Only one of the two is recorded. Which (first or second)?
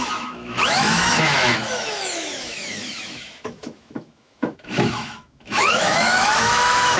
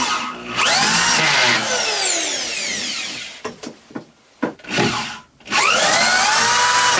second